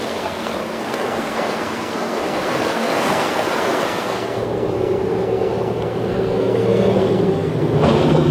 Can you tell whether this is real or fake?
fake